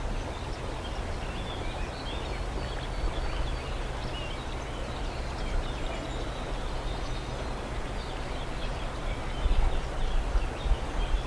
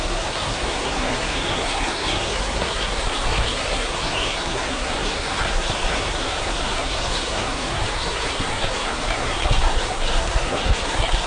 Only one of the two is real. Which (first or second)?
first